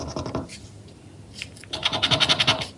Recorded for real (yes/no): yes